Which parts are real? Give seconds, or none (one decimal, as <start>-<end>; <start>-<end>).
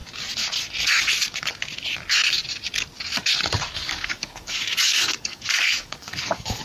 0.0-3.8